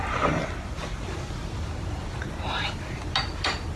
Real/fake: real